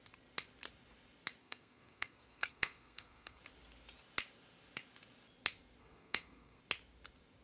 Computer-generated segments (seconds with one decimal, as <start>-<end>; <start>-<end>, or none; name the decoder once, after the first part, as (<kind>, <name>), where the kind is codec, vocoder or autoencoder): 1.4-3.4 (codec, SNAC); 5.8-6.6